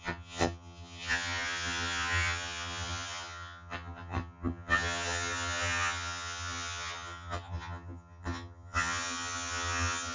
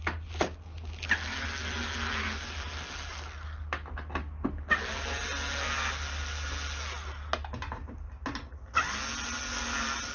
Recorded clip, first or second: second